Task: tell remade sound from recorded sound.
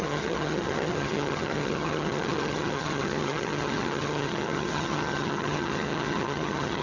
remade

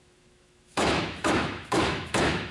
remade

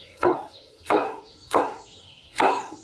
remade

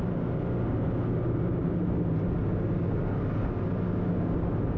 recorded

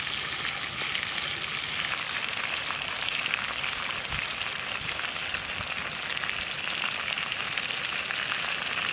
recorded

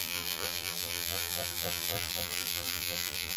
remade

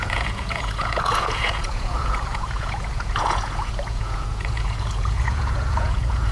remade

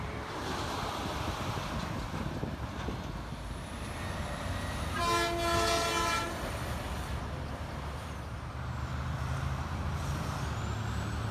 recorded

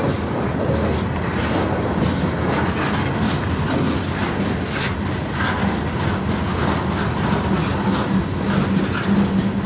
recorded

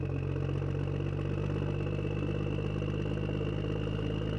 recorded